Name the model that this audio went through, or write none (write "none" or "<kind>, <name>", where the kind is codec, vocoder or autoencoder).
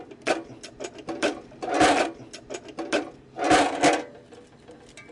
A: none